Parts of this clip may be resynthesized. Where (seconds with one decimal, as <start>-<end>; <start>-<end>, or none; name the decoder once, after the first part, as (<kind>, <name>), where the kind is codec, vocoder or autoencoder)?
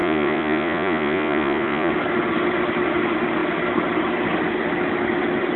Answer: 0.0-1.9 (vocoder, Vocos)